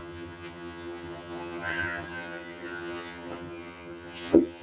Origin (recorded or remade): remade